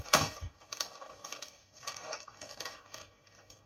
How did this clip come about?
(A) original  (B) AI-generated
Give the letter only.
B